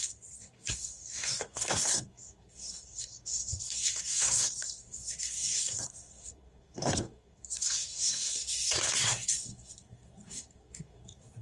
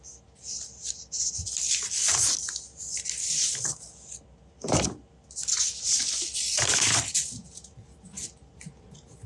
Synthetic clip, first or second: first